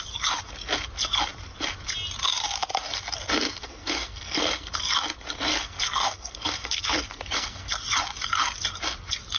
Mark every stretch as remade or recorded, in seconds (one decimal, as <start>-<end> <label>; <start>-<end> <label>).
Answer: 0.0-3.6 recorded; 3.6-4.7 remade; 4.7-5.5 recorded; 5.5-7.7 remade; 7.7-9.4 recorded